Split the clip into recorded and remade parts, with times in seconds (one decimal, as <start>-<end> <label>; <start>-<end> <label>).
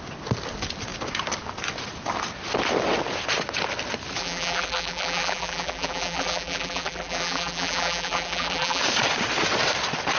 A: 0.0-4.2 recorded; 4.2-8.8 remade; 8.8-10.2 recorded